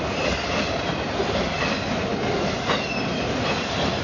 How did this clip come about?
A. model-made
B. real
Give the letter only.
A